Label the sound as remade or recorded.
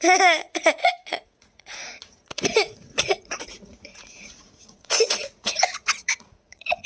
remade